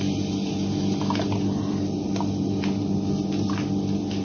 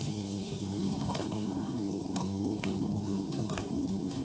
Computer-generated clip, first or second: second